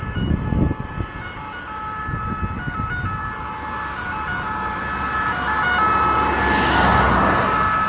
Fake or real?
real